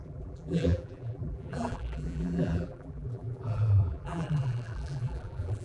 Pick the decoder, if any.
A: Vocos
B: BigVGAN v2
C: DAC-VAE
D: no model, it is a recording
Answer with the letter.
B